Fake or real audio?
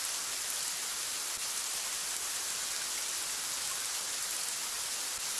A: real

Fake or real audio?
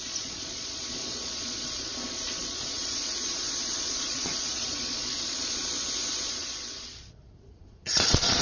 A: fake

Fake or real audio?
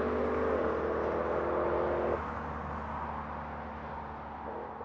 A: real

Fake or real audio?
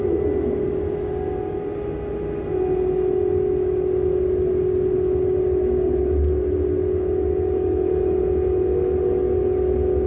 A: real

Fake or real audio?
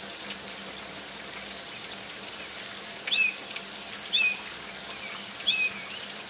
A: real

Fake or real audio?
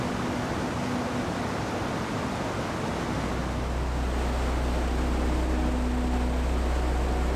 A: real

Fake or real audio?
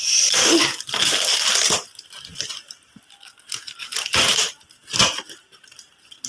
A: real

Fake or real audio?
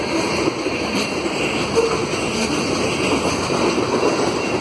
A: real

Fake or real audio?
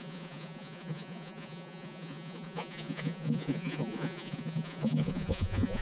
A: fake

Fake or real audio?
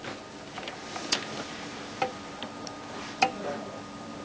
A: real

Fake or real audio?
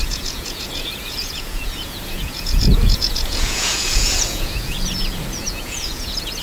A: fake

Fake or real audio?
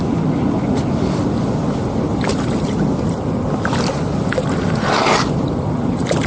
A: real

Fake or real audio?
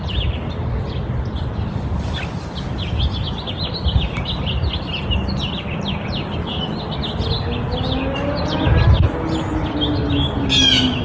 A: real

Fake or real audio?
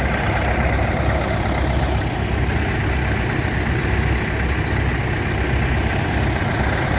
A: real